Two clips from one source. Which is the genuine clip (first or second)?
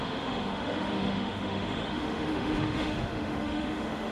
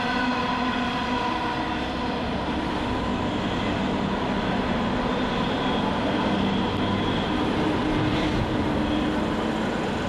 second